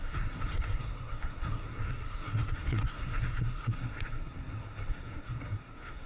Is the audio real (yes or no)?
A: no